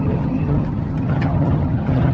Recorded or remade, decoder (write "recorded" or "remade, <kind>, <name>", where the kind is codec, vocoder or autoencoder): remade, vocoder, HiFi-GAN